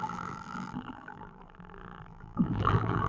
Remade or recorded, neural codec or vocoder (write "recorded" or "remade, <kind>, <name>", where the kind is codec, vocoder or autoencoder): remade, vocoder, BigVGAN v2